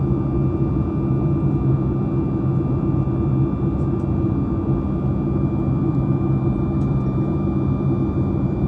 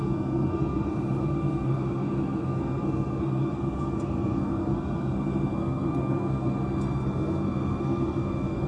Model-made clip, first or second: second